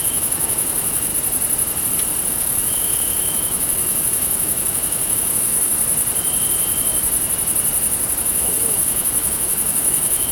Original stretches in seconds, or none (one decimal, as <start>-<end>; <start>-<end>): 1.1-2.3; 5.7-8.2